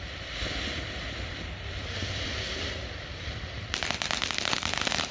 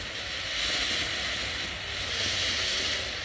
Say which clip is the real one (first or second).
second